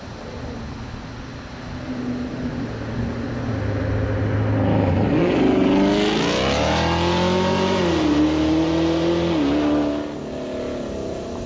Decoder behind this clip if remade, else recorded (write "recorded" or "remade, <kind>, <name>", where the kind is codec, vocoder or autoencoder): recorded